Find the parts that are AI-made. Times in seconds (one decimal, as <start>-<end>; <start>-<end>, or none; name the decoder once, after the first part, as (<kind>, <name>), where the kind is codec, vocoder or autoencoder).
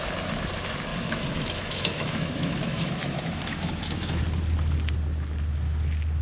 0.9-4.2 (autoencoder, DAC-VAE)